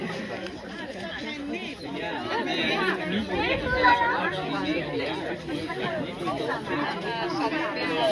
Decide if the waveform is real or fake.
real